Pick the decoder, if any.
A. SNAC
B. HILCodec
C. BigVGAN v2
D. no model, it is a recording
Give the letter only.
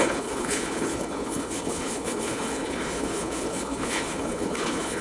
B